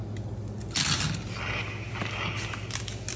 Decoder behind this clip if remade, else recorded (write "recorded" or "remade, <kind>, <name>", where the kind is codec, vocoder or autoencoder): recorded